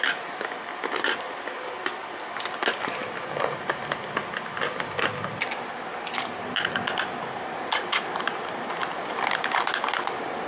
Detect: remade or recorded recorded